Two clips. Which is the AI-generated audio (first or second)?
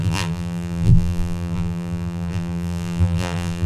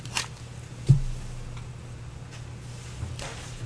first